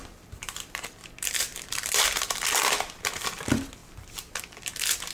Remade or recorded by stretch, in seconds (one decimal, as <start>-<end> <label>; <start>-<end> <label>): 0.0-3.1 remade; 3.1-3.8 recorded; 3.8-4.4 remade; 4.4-5.1 recorded